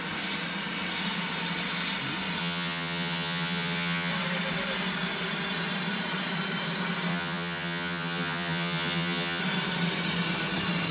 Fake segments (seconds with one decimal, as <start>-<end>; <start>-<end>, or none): 2.4-4.1; 7.1-9.4